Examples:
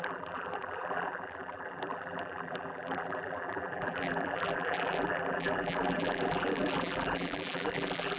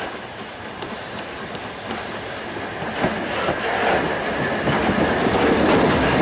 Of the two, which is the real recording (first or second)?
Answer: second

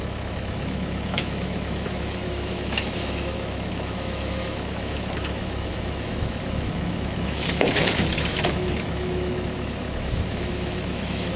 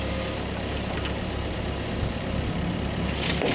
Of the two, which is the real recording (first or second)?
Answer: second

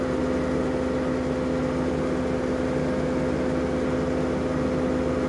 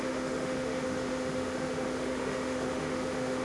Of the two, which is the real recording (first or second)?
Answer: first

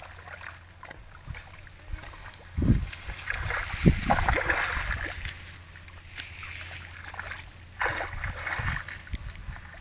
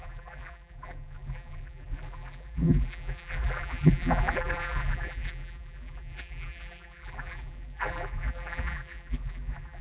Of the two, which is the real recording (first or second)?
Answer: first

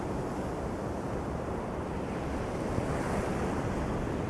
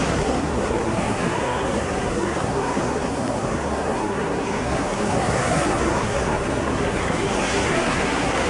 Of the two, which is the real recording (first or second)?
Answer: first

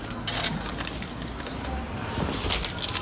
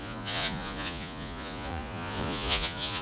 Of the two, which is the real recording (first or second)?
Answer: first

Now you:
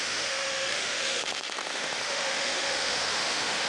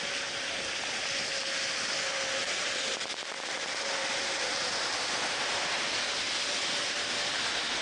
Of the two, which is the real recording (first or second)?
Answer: second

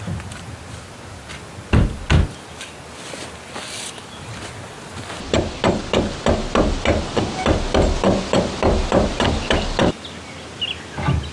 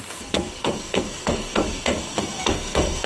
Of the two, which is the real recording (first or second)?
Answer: first